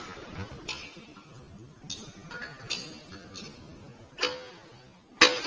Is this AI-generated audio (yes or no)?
no